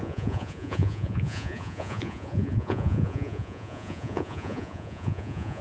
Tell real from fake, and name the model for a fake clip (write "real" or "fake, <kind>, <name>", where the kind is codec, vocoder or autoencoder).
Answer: fake, vocoder, Vocos